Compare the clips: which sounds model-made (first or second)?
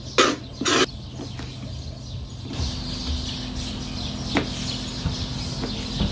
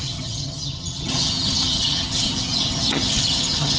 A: second